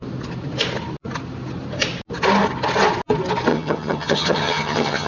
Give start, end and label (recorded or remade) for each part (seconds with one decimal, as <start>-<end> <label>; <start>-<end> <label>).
0.0-3.5 recorded; 3.5-5.1 remade